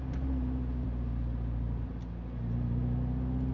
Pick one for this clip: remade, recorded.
recorded